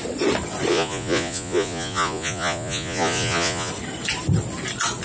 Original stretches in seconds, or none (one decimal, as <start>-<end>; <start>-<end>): 0.0-0.7; 3.7-5.0